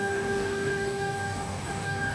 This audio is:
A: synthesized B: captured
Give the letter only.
A